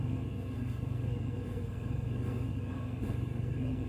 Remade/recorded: remade